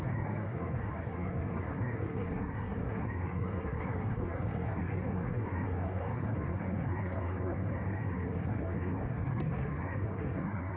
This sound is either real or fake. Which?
fake